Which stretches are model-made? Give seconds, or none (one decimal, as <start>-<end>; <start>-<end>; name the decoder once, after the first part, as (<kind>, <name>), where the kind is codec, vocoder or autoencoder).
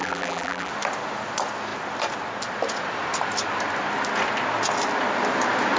0.0-0.7 (vocoder, BigVGAN v2)